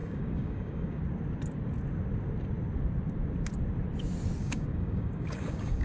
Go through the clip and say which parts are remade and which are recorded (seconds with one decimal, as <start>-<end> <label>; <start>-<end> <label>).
0.0-1.0 remade; 1.0-4.4 recorded; 4.4-5.8 remade